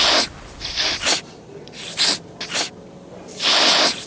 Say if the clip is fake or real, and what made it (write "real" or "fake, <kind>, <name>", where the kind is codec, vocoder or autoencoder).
real